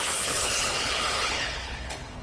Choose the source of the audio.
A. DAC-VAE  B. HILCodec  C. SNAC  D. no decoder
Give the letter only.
B